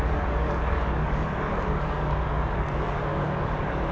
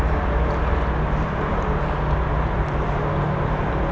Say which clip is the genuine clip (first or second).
second